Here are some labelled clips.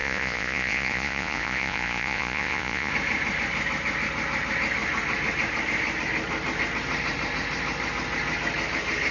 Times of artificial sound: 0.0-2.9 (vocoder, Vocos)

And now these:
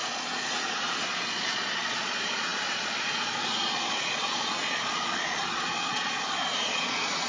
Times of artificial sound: 0.0-7.3 (vocoder, Vocos)

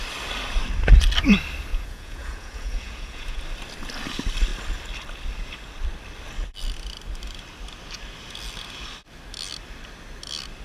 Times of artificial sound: 1.7-3.4 (vocoder, Vocos)

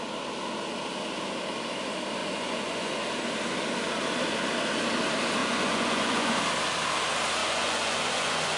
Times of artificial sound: 2.2-3.0 (vocoder, Vocos); 5.4-6.4; 7.4-8.6

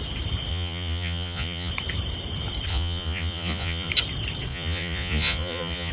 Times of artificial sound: 0.5-1.7 (vocoder, Vocos); 2.7-3.9; 4.5-5.9